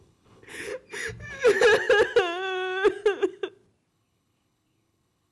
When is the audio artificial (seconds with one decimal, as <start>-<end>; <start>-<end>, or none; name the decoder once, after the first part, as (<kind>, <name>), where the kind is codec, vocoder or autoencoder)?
0.0-0.7 (codec, HILCodec); 3.9-5.3